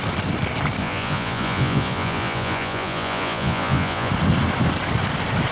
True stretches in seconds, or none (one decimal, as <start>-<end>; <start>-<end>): 0.0-0.8; 4.1-5.5